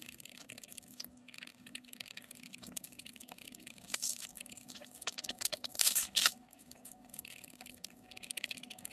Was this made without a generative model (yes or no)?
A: no